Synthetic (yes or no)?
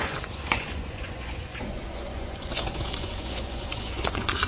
yes